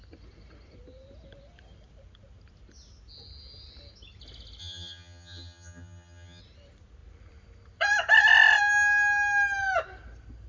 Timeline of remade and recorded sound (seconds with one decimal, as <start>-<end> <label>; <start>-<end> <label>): 0.0-4.6 recorded; 4.6-6.4 remade; 6.4-10.5 recorded